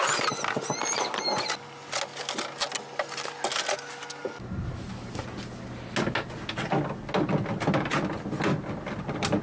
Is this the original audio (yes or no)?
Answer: yes